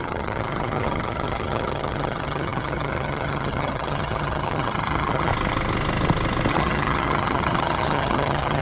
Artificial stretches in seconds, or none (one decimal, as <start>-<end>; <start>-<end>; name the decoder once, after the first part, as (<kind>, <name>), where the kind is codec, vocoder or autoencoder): 0.0-5.3 (vocoder, HiFi-GAN); 6.5-8.6